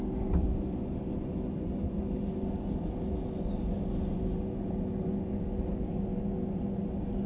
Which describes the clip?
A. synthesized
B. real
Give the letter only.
B